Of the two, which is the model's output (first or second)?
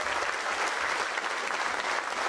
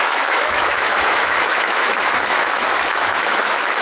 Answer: second